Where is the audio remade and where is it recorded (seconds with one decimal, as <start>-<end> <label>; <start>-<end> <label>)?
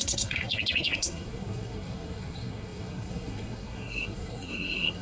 0.0-5.0 remade